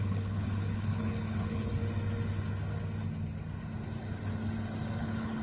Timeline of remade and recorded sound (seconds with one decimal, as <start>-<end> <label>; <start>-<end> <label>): 0.0-1.8 remade; 1.8-5.0 recorded; 5.0-5.4 remade